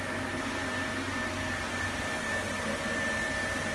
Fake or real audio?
real